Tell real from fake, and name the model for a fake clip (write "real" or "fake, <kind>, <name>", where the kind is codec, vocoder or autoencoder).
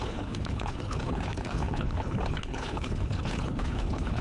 fake, codec, HILCodec